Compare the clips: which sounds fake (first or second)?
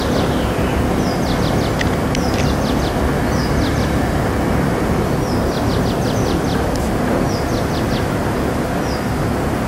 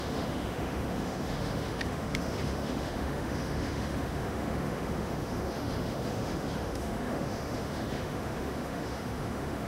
second